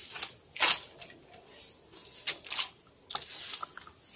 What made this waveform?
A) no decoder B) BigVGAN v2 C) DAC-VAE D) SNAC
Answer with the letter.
A